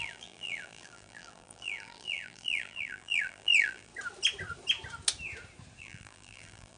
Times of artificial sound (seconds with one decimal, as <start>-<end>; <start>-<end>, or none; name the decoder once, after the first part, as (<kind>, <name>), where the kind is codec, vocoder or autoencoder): 0.0-3.9 (vocoder, BigVGAN v2); 5.8-6.8